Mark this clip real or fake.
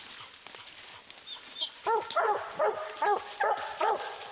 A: real